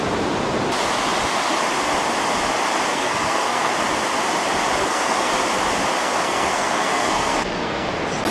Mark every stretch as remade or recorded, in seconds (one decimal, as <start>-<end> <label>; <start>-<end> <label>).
0.0-2.9 recorded; 2.9-3.7 remade; 3.7-4.8 recorded; 4.8-5.3 remade; 5.3-6.0 recorded; 6.0-7.9 remade; 7.9-8.3 recorded